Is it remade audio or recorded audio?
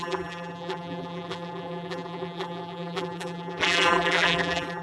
remade